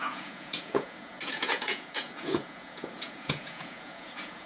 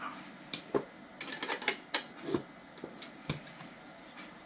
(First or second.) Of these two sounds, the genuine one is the second